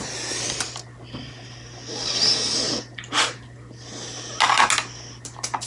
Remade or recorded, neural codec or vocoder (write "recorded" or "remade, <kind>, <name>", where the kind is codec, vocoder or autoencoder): recorded